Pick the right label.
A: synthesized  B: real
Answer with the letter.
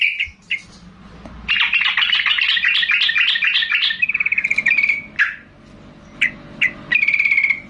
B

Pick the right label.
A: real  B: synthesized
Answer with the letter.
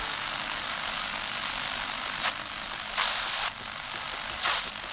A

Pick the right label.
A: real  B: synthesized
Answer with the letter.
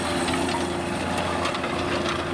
A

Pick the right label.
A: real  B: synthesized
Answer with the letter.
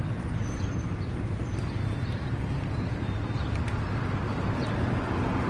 B